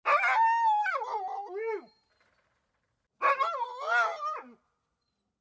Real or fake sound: real